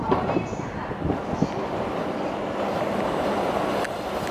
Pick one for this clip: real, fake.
real